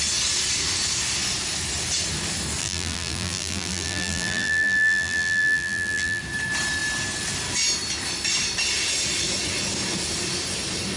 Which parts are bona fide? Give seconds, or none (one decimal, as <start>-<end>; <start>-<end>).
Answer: 0.0-2.6; 6.2-11.0